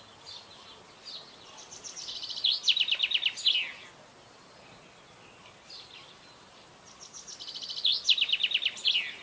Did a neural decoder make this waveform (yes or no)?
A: no